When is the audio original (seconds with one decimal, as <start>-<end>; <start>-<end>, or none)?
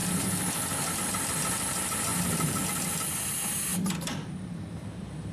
0.0-2.1; 2.6-3.7; 4.6-5.3